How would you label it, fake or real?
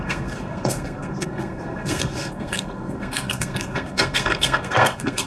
fake